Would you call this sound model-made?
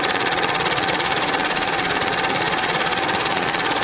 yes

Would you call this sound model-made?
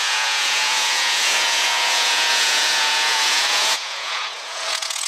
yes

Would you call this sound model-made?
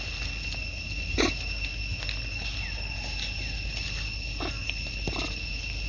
no